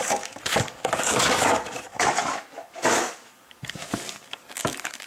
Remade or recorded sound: remade